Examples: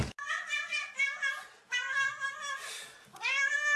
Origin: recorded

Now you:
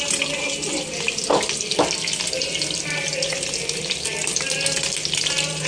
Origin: recorded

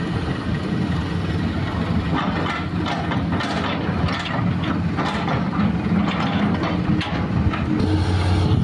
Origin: recorded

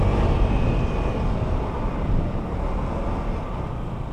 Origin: recorded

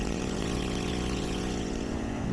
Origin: remade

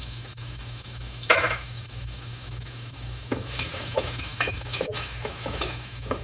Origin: remade